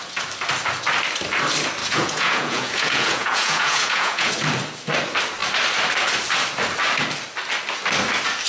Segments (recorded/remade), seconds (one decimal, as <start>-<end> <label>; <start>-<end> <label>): 0.0-1.8 recorded; 1.8-4.3 remade; 4.3-8.5 recorded